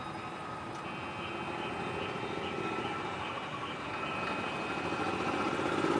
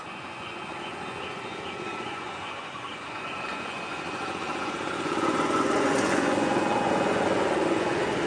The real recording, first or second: first